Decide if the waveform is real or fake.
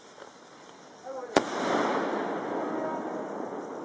real